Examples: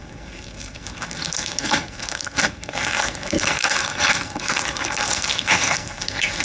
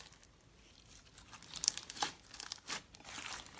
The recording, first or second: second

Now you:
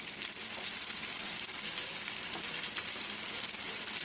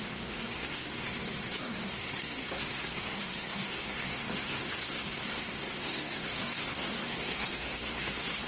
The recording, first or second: first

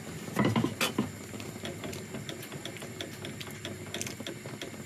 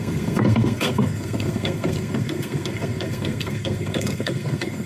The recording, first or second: first